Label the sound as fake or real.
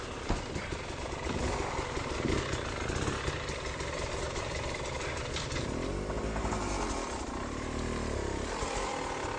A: real